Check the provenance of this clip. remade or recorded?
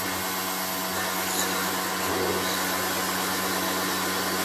recorded